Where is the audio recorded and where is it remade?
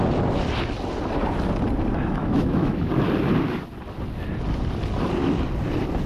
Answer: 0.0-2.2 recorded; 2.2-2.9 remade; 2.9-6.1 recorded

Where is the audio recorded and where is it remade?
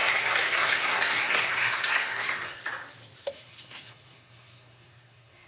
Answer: 0.0-2.6 remade; 2.6-3.2 recorded; 3.2-5.5 remade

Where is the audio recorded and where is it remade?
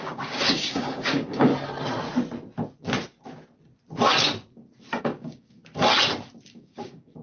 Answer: 0.0-1.5 remade; 1.5-5.0 recorded; 5.0-5.6 remade; 5.6-6.5 recorded; 6.5-7.2 remade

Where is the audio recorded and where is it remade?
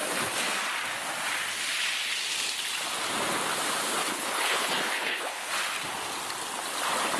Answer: 0.0-4.0 recorded; 4.0-5.5 remade; 5.5-7.2 recorded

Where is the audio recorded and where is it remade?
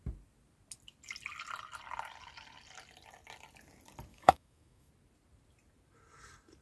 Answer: 0.0-4.1 recorded; 4.1-4.9 remade; 4.9-6.6 recorded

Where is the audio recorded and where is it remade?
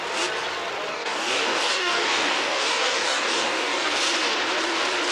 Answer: 0.0-0.9 recorded; 0.9-4.0 remade; 4.0-5.1 recorded